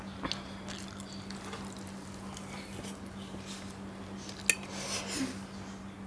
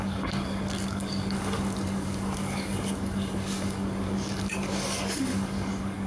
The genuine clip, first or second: first